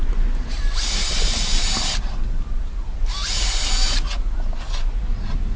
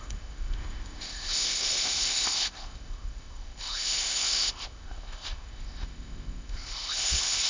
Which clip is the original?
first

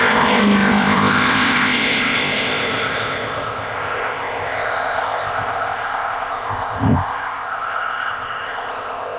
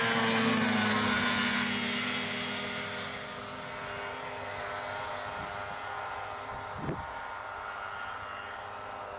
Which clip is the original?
second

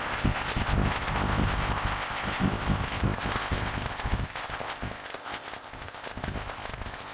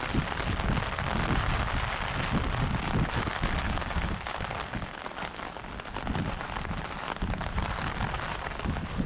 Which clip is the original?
second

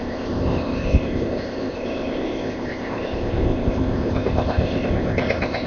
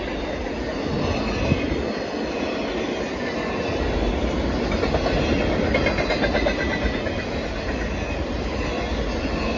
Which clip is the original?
second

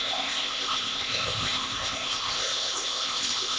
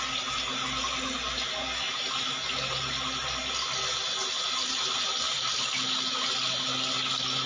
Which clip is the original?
second